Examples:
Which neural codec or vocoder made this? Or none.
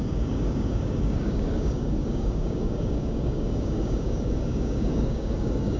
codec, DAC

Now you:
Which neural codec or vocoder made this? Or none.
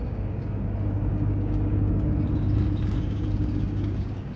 codec, DAC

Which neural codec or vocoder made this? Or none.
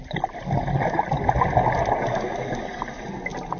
none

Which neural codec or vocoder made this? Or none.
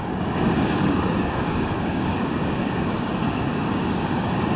codec, DAC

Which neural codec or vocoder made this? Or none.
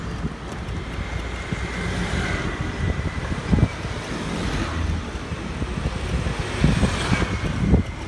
none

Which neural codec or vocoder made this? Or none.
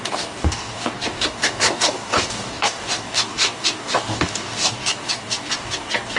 codec, DAC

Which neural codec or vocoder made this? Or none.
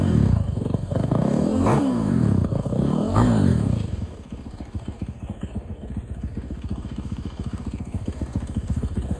codec, DAC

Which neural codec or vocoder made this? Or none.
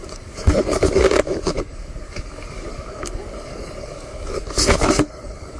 codec, DAC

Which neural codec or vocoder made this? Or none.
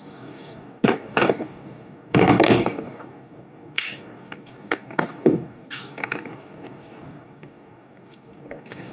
codec, DAC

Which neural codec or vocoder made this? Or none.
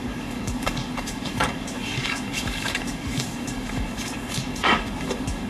codec, DAC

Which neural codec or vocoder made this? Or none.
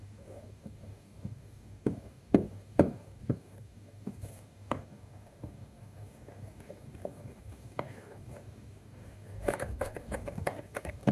codec, DAC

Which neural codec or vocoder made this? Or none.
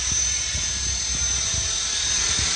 none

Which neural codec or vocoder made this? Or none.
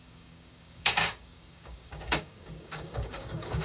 codec, DAC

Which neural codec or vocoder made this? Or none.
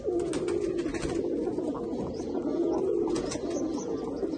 none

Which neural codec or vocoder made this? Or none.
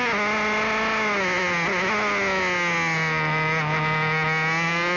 none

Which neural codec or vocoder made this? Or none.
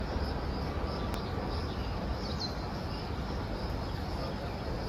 none